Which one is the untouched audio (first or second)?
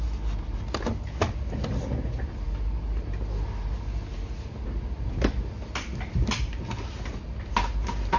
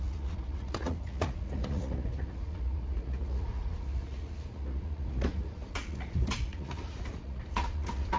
first